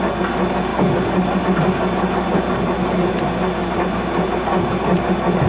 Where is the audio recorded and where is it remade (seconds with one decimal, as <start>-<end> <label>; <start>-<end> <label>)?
0.0-5.5 recorded